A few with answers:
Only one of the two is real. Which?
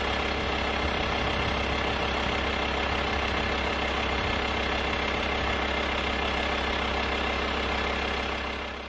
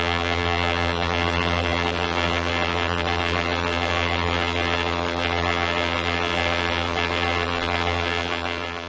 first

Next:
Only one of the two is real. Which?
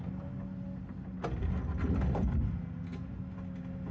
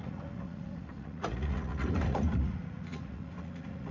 first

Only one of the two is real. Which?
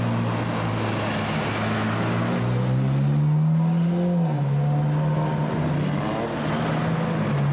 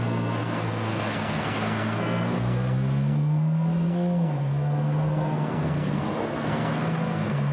first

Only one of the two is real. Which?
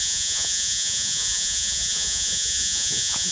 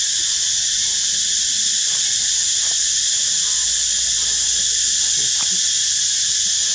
second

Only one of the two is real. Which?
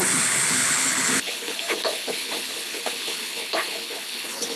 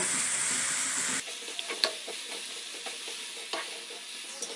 second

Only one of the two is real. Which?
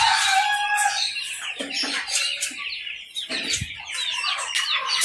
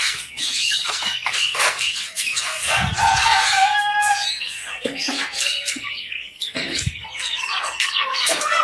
first